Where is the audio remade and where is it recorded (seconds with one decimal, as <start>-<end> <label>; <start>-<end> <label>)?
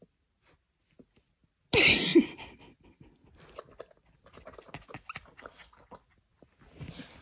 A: 0.0-7.2 recorded